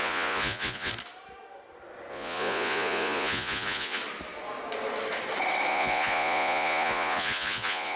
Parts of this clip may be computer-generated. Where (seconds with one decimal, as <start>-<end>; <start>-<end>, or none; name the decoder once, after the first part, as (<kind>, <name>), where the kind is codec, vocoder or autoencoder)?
0.0-0.9 (vocoder, Vocos); 2.1-4.0; 5.7-8.0